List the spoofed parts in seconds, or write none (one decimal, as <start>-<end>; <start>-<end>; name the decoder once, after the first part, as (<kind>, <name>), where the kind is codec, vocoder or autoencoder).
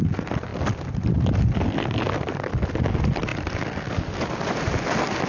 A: none